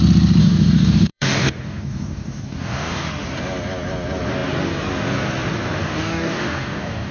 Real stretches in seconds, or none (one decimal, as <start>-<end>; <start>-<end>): 0.0-0.4; 3.1-5.8

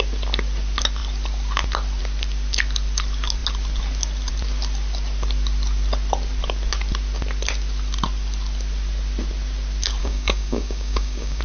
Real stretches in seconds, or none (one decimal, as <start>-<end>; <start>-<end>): 0.0-10.0